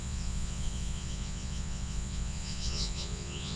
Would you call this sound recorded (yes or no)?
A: no